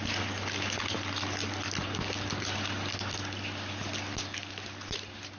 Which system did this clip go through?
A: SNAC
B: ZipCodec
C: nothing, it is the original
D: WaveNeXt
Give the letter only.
C